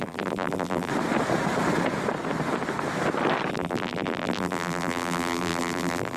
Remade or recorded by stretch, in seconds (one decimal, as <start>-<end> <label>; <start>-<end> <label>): 0.0-0.9 remade; 0.9-3.5 recorded; 3.5-6.2 remade